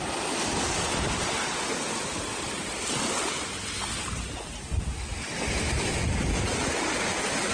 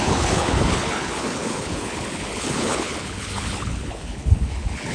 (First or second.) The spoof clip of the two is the second